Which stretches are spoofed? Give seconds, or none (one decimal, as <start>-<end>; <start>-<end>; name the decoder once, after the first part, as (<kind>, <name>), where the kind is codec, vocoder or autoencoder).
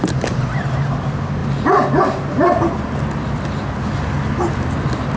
none